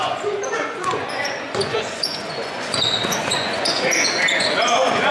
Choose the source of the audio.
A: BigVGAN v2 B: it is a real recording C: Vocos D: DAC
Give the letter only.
C